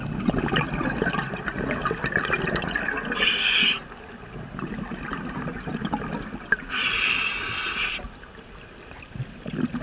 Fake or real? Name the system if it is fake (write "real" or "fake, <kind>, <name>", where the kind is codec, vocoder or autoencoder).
real